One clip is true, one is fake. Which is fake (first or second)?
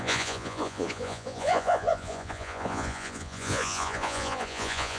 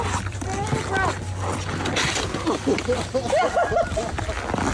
first